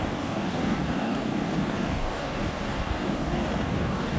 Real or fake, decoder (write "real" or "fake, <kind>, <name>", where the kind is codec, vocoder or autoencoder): fake, codec, DAC